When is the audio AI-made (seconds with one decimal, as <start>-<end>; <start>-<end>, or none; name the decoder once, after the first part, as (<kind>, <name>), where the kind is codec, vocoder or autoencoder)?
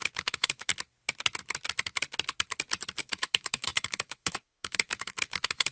0.0-0.7 (autoencoder, DAC-VAE); 3.0-5.7